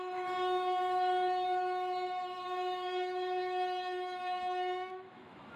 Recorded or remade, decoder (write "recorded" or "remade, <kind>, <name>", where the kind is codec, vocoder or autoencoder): remade, autoencoder, DAC-VAE